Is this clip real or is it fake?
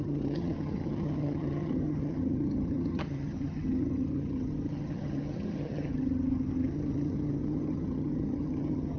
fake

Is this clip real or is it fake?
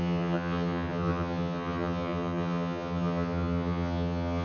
fake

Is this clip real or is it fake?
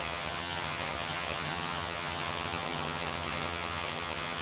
fake